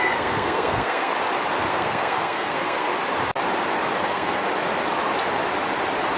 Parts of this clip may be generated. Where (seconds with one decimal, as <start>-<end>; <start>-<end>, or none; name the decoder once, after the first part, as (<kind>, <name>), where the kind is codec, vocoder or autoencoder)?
0.0-1.1 (codec, SNAC); 1.7-2.9; 4.0-4.5